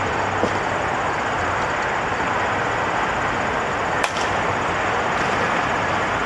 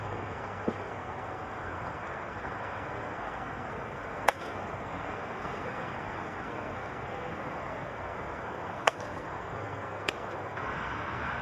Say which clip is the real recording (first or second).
first